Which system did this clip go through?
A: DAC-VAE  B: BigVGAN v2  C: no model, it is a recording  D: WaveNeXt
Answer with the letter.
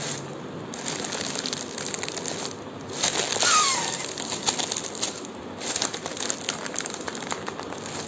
C